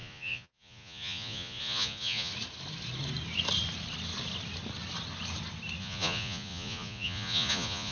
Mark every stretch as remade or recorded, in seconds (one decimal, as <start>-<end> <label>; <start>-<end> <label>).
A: 0.0-2.3 remade; 2.3-5.8 recorded; 5.8-7.9 remade